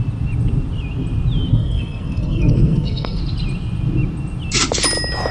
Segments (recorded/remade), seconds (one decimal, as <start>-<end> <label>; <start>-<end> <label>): 0.0-1.5 recorded; 1.5-3.2 remade; 3.2-5.3 recorded